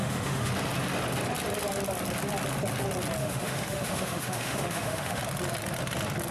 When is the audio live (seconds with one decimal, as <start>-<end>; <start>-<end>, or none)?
0.5-3.2; 5.2-6.3